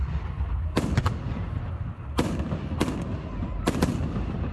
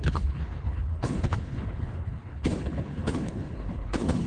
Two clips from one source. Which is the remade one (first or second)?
second